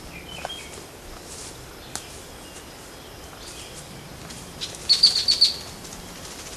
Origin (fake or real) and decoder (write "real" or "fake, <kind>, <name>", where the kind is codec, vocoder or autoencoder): real